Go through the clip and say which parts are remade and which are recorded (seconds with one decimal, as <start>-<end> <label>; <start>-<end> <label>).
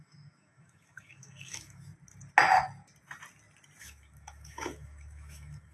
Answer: 0.0-1.9 remade; 1.9-3.8 recorded; 3.8-5.7 remade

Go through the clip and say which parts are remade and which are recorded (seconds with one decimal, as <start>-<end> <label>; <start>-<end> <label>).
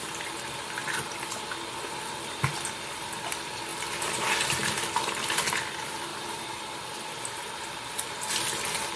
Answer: 0.0-6.1 recorded; 6.1-6.6 remade; 6.6-9.0 recorded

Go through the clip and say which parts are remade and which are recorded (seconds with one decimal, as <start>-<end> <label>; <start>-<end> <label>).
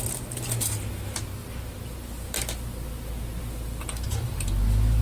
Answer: 0.0-5.0 recorded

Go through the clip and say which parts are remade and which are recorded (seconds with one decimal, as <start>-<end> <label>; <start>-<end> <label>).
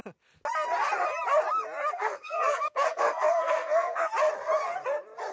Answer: 0.0-1.9 recorded; 1.9-4.1 remade; 4.1-5.3 recorded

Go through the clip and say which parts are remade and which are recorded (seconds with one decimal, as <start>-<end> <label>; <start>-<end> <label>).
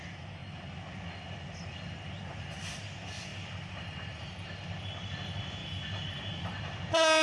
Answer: 0.0-3.3 recorded; 3.3-4.5 remade; 4.5-5.6 recorded; 5.6-6.6 remade; 6.6-7.2 recorded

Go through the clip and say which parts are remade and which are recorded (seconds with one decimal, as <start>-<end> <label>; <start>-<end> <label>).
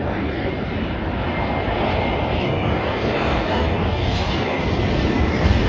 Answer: 0.0-0.5 remade; 0.5-2.4 recorded; 2.4-4.6 remade; 4.6-5.3 recorded; 5.3-5.7 remade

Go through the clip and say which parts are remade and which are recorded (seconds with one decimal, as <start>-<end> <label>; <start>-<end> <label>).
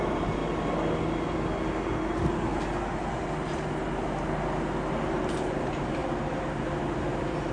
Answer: 0.0-0.4 remade; 0.4-4.9 recorded; 4.9-7.5 remade